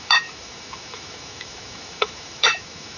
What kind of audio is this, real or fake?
fake